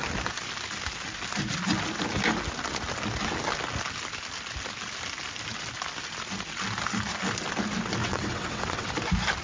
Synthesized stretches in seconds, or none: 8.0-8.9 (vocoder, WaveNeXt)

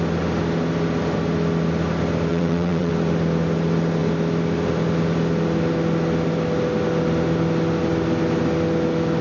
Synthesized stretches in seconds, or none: 2.3-2.9 (vocoder, WaveNeXt)

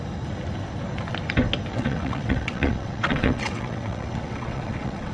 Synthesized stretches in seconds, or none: 1.7-5.1 (vocoder, WaveNeXt)

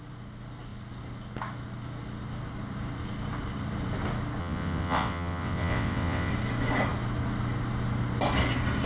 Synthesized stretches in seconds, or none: 4.4-6.3 (vocoder, WaveNeXt)

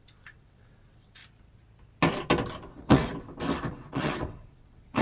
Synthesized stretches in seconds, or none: 0.0-1.2 (vocoder, WaveNeXt); 2.7-3.1; 3.7-5.0